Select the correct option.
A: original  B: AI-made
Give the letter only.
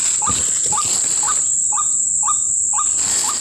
A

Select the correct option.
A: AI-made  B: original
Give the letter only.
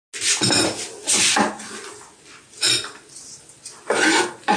B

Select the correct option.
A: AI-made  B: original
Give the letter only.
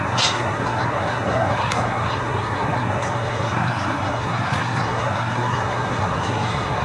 A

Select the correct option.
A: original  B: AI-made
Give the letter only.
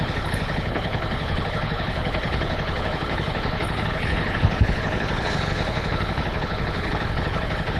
B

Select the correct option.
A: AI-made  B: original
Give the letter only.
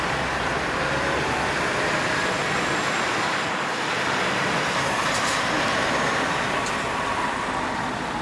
A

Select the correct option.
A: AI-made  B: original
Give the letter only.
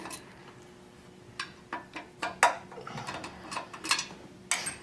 B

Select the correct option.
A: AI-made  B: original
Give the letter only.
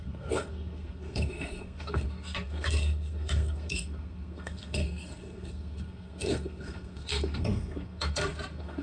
A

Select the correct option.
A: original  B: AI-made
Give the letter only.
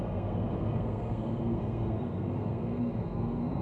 B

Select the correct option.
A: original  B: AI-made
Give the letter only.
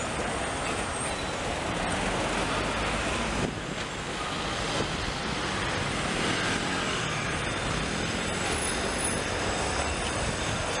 A